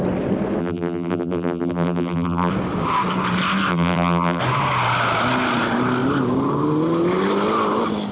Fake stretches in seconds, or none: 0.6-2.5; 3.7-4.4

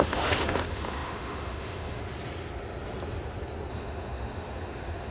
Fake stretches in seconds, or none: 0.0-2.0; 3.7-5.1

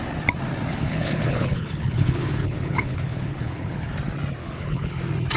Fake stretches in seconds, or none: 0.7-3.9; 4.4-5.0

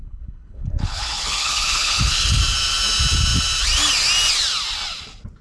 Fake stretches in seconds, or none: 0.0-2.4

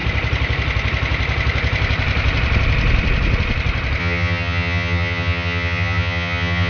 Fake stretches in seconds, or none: 4.0-6.7

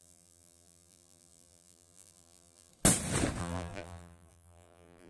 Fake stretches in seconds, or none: 0.0-2.7; 3.4-5.1

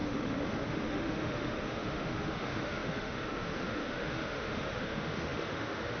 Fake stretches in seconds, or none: 0.0-6.0

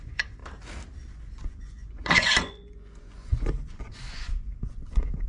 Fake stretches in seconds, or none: 0.0-0.4; 1.1-5.3